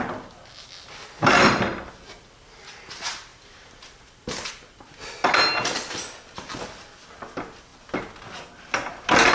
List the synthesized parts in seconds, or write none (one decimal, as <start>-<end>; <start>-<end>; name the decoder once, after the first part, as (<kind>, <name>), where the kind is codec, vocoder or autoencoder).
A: none